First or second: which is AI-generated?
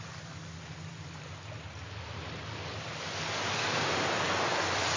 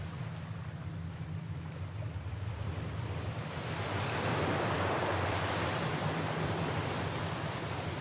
second